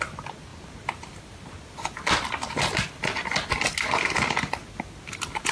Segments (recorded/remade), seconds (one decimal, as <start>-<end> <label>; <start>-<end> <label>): 0.0-5.5 recorded